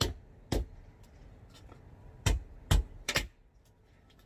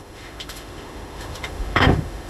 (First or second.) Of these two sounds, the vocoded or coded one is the second